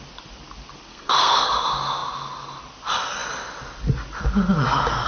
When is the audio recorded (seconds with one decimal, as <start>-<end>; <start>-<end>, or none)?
0.0-0.9; 1.5-5.1